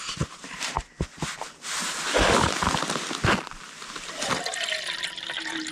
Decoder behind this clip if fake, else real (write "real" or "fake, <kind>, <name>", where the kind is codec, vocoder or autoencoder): real